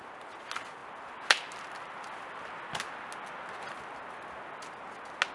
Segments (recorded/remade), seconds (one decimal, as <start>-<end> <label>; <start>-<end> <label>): 0.0-5.3 recorded